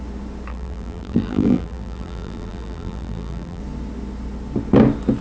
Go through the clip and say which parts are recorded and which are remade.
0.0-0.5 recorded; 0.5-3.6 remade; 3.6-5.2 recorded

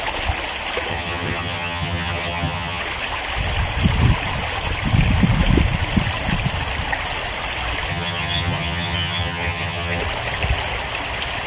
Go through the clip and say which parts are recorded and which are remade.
0.0-0.9 recorded; 0.9-2.8 remade; 2.8-7.9 recorded; 7.9-10.0 remade; 10.0-11.5 recorded